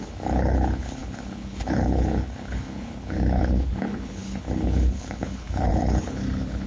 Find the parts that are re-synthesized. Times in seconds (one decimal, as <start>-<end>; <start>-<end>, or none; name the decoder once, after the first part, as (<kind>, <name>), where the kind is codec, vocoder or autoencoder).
0.0-6.7 (codec, HILCodec)